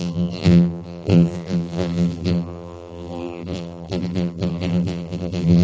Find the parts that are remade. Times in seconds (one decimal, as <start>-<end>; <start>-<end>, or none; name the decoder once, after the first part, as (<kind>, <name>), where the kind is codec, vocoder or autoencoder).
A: 0.0-5.6 (vocoder, BigVGAN v2)